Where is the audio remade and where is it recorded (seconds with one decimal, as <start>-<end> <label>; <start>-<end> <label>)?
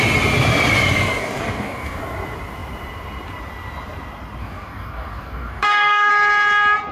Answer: 0.0-1.2 recorded; 1.2-2.0 remade; 2.0-4.4 recorded; 4.4-6.1 remade; 6.1-6.9 recorded